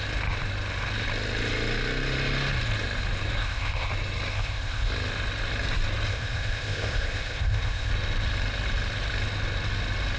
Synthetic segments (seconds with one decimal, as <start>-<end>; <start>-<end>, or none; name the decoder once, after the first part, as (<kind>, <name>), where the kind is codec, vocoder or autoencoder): 3.4-3.9 (codec, ZipCodec); 4.3-4.9; 6.1-7.9